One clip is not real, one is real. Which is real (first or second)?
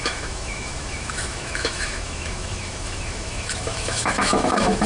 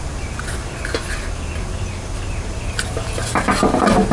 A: second